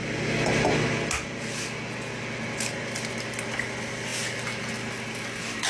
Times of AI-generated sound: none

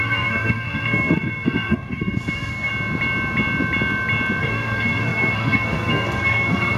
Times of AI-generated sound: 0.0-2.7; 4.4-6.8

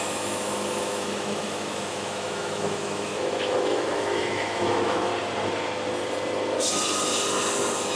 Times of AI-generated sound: 0.0-5.1